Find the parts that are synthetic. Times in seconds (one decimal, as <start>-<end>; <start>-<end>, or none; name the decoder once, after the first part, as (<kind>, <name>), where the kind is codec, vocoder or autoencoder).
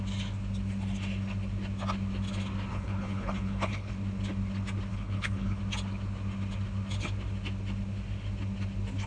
2.7-3.9 (codec, HILCodec); 4.9-5.6